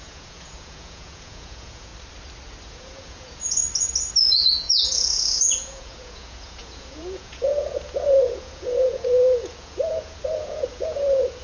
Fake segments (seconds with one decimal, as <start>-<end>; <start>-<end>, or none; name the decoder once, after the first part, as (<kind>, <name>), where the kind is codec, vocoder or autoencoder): 0.0-1.9 (vocoder, Vocos); 2.7-3.6; 4.2-11.4